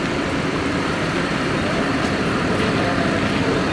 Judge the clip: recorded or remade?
remade